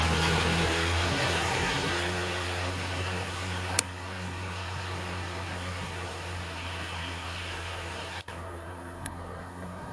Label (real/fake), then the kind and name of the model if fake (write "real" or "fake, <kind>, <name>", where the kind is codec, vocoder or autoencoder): fake, codec, SNAC